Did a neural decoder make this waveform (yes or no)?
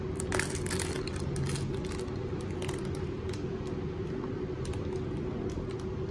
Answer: no